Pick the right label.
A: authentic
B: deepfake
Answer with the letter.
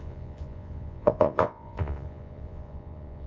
B